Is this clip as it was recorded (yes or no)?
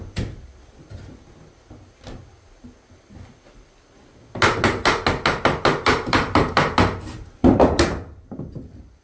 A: yes